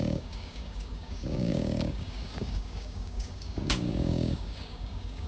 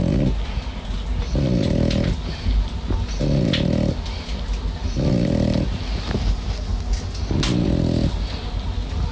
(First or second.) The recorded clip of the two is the second